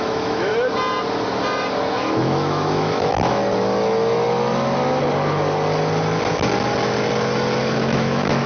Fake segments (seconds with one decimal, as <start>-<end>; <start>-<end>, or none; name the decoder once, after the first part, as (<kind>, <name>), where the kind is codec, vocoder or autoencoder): 0.0-0.5 (autoencoder, DAC-VAE); 2.0-3.4; 7.6-8.5